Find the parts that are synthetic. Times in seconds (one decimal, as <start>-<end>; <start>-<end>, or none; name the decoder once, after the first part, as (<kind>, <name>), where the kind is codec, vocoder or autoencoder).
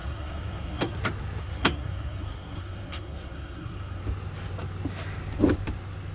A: 0.0-1.0 (codec, SNAC); 1.4-4.0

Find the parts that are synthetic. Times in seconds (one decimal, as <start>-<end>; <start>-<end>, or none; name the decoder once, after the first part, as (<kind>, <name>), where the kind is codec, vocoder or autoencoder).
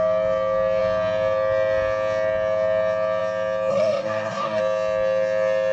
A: 3.7-4.6 (codec, SNAC)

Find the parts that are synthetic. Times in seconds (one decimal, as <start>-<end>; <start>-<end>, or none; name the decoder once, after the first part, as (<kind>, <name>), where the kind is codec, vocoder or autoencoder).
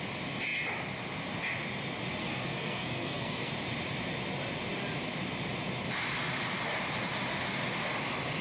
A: 2.2-3.5 (codec, SNAC)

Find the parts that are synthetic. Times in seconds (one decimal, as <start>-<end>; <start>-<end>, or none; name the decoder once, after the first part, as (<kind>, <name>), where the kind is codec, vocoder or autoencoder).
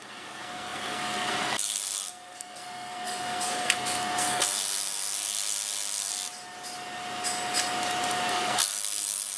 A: 0.0-6.1 (codec, SNAC); 8.3-9.4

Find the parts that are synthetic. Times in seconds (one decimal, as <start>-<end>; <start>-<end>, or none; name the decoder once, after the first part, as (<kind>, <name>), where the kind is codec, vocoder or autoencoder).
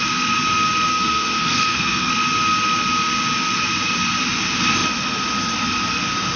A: 0.9-2.1 (codec, SNAC)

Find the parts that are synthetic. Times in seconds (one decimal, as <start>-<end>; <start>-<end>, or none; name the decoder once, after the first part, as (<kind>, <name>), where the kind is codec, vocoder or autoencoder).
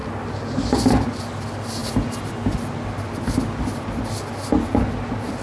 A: none